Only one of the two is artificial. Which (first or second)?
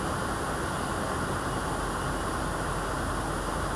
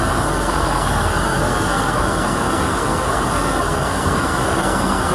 second